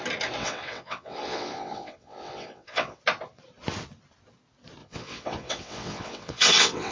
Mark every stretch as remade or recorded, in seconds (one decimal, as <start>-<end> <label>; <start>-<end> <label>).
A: 0.0-0.4 recorded; 0.4-3.0 remade; 3.0-4.8 recorded; 4.8-6.9 remade